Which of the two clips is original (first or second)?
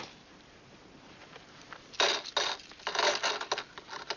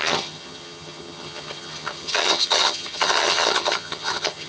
first